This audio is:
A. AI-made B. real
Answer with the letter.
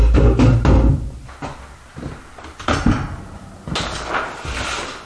B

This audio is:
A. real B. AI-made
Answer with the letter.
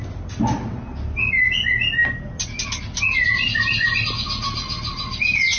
A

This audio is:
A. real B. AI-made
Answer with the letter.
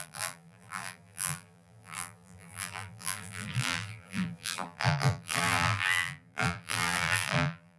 B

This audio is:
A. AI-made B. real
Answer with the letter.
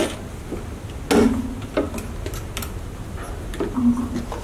B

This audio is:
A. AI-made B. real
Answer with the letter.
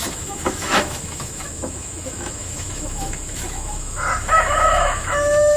A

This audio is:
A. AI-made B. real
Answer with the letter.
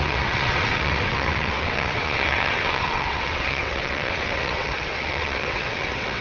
A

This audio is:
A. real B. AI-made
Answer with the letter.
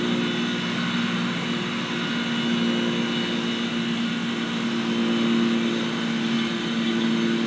A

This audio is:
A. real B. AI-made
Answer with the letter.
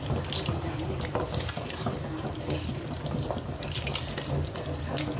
A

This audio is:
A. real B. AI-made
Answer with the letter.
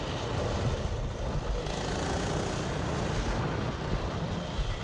A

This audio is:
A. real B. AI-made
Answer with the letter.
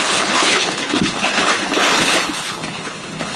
B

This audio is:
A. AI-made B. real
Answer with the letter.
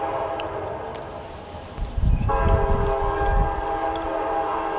B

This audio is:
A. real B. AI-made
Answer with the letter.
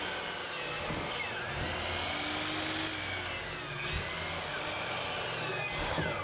A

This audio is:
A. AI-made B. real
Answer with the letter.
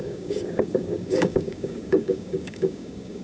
A